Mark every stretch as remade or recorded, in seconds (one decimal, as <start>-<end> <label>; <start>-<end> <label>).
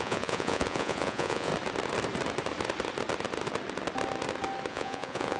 0.0-1.5 remade; 1.5-4.7 recorded; 4.7-5.4 remade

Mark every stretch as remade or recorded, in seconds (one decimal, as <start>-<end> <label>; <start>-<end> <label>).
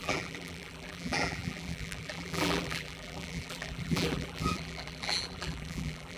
0.0-6.2 remade